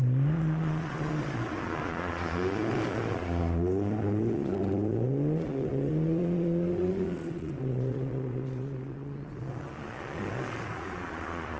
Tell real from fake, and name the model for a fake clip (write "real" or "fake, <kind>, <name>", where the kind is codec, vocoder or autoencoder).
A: fake, vocoder, Vocos